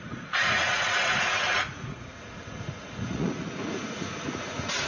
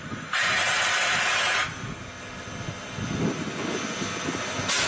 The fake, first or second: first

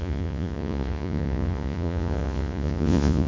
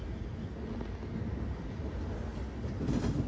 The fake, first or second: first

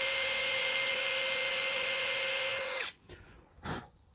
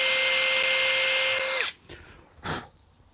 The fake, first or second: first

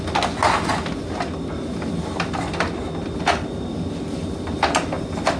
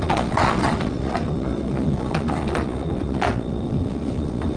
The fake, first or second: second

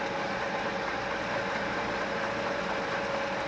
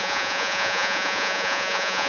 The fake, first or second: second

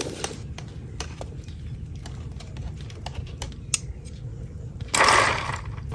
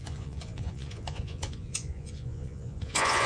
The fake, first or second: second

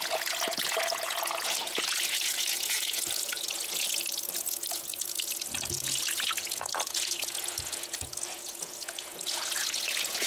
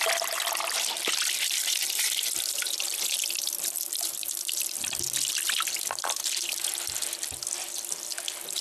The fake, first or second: first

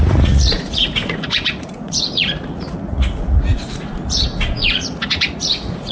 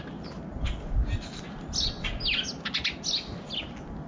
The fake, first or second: first